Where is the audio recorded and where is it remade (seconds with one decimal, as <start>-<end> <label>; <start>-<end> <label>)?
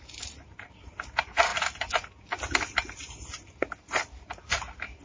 0.0-5.0 recorded